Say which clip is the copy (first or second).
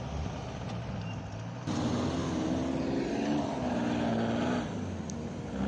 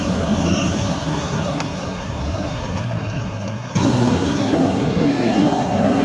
second